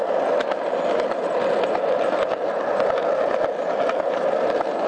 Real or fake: real